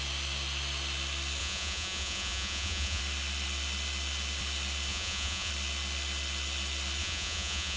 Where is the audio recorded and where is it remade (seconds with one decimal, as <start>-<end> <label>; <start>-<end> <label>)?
0.0-1.4 recorded; 1.4-3.0 remade; 3.0-4.9 recorded; 4.9-5.5 remade; 5.5-7.0 recorded; 7.0-7.8 remade